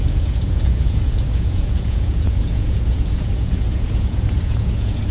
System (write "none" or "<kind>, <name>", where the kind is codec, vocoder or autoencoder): vocoder, Vocos